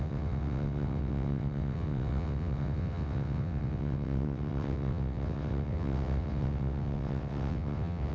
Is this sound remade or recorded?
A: remade